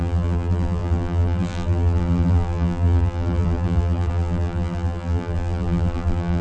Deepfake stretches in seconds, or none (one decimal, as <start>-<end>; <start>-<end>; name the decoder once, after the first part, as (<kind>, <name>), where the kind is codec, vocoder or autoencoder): 0.0-6.4 (vocoder, BigVGAN v2)